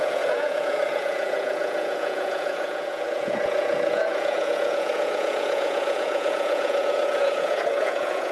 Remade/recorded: remade